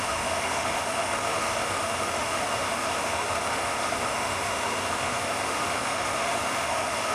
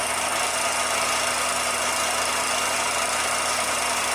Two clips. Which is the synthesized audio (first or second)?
first